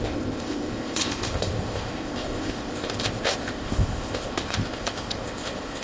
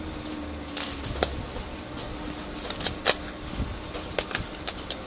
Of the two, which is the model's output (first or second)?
first